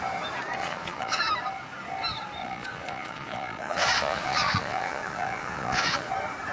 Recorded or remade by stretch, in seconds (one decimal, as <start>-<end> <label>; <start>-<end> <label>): 0.0-0.6 recorded; 0.6-1.2 remade; 1.2-2.4 recorded; 2.4-6.1 remade; 6.1-6.5 recorded